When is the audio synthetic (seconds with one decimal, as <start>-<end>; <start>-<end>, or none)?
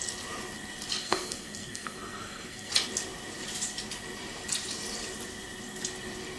1.0-2.7